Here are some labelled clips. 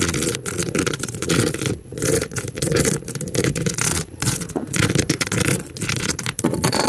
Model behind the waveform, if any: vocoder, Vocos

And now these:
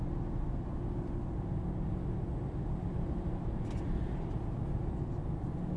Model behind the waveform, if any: none